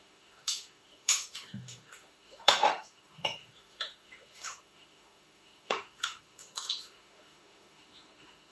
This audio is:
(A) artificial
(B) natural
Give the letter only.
A